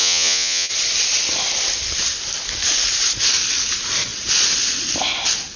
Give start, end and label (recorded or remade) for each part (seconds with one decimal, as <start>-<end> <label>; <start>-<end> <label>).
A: 0.0-0.7 remade; 0.7-5.6 recorded